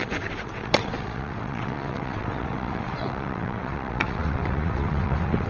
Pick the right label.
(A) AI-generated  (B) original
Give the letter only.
A